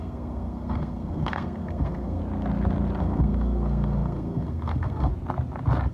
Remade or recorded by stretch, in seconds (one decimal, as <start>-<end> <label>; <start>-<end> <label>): 0.0-2.2 remade; 2.2-3.0 recorded; 3.0-5.1 remade; 5.1-5.9 recorded